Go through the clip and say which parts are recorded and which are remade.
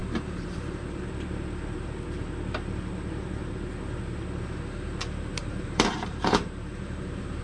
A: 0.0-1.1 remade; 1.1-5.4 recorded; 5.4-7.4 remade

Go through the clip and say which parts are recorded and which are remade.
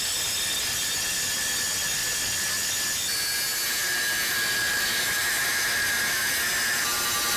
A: 0.0-7.4 recorded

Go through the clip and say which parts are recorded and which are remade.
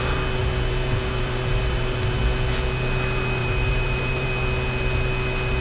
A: 0.0-0.4 recorded; 0.4-2.2 remade; 2.2-3.4 recorded; 3.4-4.3 remade; 4.3-5.6 recorded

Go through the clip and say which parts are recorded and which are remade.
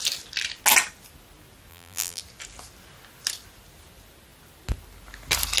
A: 0.0-1.7 recorded; 1.7-2.2 remade; 2.2-5.6 recorded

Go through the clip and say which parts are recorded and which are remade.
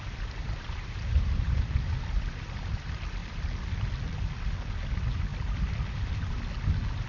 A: 0.0-0.4 recorded; 0.4-1.9 remade; 1.9-7.1 recorded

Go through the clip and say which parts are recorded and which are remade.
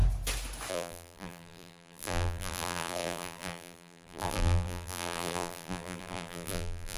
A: 0.0-0.7 recorded; 0.7-7.0 remade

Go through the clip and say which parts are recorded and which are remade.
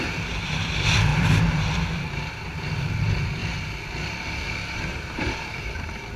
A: 0.0-6.2 recorded